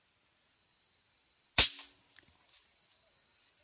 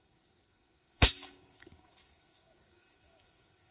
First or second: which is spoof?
second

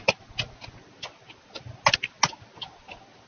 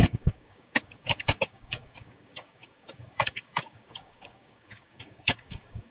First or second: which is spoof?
second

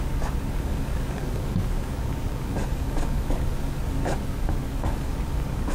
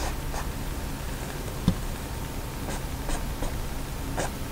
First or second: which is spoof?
first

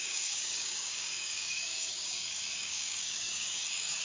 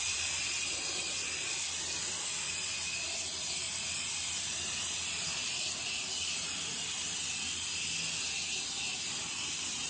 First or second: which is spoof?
first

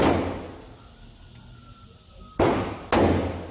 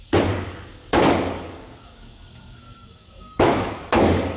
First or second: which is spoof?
second